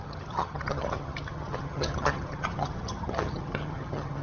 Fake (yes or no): yes